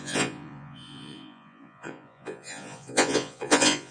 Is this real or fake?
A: fake